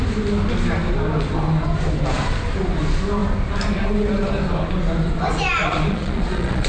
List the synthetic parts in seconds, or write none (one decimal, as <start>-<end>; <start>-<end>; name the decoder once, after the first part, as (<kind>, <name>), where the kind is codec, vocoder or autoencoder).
5.6-6.7 (vocoder, Vocos)